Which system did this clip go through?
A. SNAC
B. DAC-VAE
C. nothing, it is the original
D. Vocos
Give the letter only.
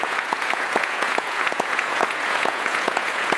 D